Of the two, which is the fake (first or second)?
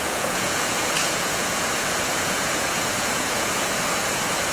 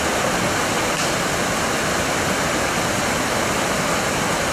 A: first